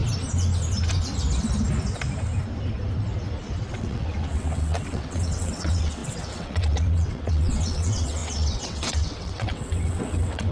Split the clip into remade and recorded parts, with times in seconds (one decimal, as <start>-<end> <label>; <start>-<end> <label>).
0.0-3.7 recorded; 3.7-10.5 remade